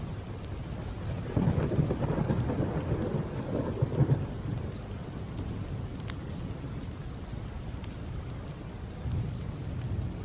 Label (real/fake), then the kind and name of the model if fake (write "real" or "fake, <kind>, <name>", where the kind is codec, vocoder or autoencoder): real